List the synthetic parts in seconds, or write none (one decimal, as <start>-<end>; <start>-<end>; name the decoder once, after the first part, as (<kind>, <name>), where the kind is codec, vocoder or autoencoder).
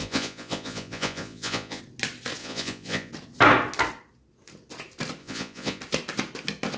0.0-1.8 (vocoder, Vocos); 2.4-3.1; 5.2-5.8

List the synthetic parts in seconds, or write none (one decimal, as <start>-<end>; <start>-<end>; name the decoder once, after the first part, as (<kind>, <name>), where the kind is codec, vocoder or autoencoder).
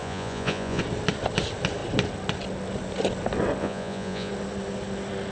0.0-0.8 (vocoder, Vocos); 3.6-4.3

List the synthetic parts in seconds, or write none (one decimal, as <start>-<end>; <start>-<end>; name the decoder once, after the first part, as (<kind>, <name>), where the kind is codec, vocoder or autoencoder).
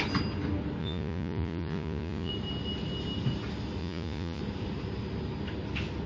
0.8-2.3 (vocoder, Vocos); 3.8-4.4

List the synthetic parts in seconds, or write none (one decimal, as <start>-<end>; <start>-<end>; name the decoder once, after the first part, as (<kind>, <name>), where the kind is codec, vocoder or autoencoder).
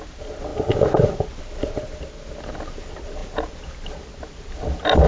none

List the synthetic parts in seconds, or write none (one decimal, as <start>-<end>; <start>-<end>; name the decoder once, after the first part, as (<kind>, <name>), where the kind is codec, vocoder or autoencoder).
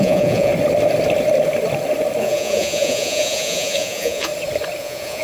0.0-0.5 (vocoder, Vocos); 2.2-4.3; 4.8-5.2